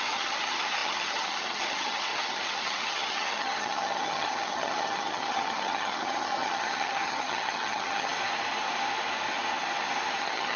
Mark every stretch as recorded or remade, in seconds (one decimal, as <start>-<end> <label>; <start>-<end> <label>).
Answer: 0.0-8.1 remade; 8.1-10.2 recorded; 10.2-10.6 remade